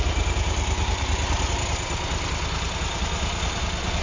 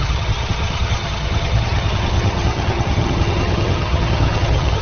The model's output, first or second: second